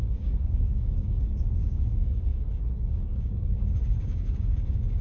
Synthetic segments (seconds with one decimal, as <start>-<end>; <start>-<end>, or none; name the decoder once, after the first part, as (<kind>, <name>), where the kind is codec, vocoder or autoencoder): 0.0-5.0 (codec, DAC)